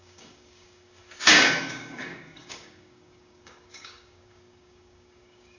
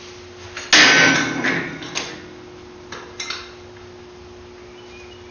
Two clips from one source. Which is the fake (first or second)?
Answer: first